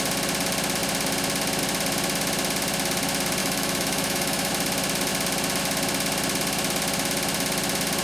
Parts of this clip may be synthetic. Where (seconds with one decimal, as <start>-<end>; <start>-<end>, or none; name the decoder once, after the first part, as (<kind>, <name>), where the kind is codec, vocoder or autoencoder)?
3.4-4.5 (autoencoder, DAC-VAE)